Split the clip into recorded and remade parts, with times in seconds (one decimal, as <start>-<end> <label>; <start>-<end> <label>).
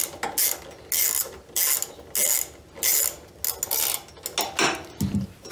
0.0-5.5 recorded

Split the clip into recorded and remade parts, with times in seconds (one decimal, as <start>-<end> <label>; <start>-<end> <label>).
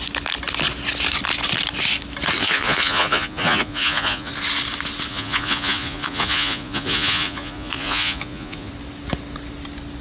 0.0-2.4 recorded; 2.4-4.3 remade; 4.3-5.1 recorded; 5.1-8.7 remade; 8.7-10.0 recorded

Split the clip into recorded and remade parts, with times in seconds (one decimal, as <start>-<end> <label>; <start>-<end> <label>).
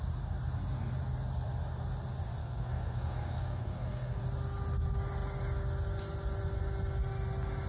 0.0-2.4 recorded; 2.4-4.2 remade; 4.2-7.7 recorded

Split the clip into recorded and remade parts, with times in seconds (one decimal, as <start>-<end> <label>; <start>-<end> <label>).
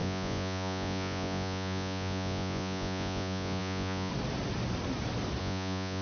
0.0-4.1 remade; 4.1-5.4 recorded; 5.4-6.0 remade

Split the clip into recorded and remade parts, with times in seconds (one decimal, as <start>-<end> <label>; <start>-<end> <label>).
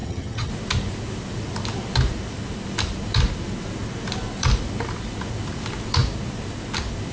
0.0-0.5 remade; 0.5-7.1 recorded